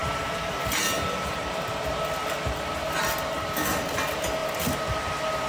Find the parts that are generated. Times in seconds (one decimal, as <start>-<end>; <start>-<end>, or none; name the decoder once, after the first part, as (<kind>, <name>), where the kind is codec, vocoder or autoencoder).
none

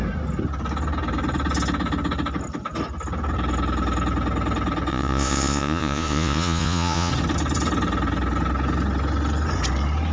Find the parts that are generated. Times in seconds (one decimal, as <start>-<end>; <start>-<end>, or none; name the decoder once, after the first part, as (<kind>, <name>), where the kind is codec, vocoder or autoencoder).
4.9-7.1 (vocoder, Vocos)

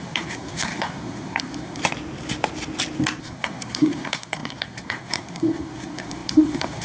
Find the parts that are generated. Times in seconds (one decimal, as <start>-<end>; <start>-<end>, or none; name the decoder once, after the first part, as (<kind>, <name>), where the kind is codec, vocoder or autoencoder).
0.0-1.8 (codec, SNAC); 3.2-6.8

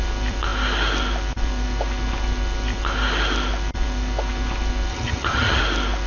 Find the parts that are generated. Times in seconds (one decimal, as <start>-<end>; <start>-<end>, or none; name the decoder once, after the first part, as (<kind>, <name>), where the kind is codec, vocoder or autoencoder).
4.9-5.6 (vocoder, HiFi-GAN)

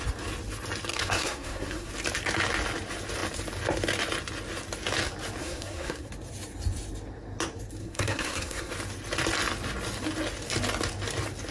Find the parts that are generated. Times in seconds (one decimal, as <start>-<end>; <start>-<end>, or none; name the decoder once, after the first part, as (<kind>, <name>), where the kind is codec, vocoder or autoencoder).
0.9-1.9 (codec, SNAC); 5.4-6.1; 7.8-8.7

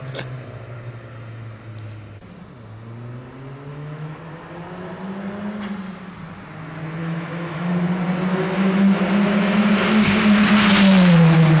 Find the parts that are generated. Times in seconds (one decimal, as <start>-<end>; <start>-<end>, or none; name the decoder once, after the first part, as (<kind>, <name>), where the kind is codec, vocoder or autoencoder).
3.7-4.2 (autoencoder, DAC-VAE); 7.0-7.7; 8.3-9.0